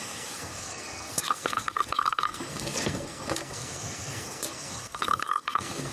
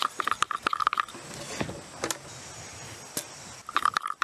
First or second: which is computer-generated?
first